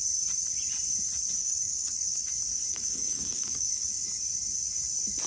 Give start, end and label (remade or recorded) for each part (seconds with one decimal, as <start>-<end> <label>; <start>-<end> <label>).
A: 0.0-1.4 recorded; 1.4-2.3 remade; 2.3-2.7 recorded; 2.7-4.2 remade; 4.2-5.3 recorded